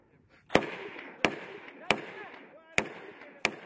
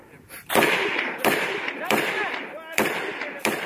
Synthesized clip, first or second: second